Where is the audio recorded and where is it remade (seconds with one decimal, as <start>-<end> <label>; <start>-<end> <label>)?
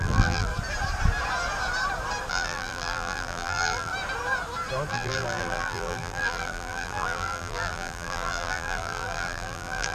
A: 0.0-0.5 remade; 0.5-2.3 recorded; 2.3-3.9 remade; 3.9-4.9 recorded; 4.9-9.9 remade